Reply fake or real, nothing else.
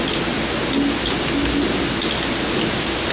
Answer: real